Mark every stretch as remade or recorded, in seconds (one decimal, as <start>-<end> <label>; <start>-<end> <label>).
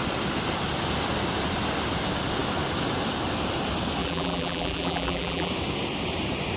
0.0-4.0 recorded; 4.0-5.5 remade; 5.5-6.6 recorded